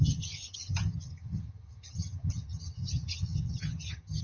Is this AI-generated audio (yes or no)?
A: yes